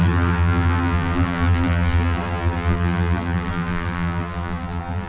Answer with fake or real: fake